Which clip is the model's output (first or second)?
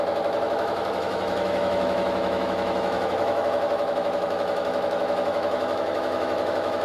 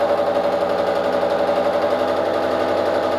first